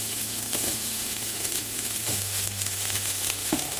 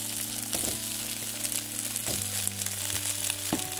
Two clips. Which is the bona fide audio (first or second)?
second